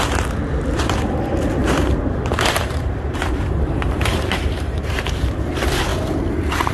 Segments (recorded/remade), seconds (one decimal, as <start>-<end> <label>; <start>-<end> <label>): 0.0-1.6 recorded; 1.6-5.3 remade; 5.3-6.7 recorded